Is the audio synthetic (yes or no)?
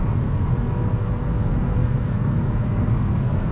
yes